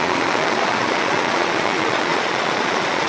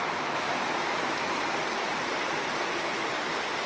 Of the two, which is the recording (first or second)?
second